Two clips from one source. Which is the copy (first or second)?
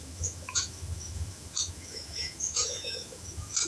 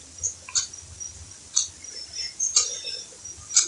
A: first